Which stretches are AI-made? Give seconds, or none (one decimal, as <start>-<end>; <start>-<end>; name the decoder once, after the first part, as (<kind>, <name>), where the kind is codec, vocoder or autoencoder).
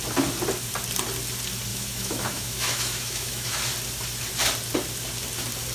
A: 1.7-3.6 (autoencoder, DAC-VAE)